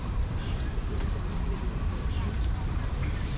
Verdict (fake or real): fake